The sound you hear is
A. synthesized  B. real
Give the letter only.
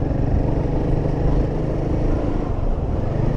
B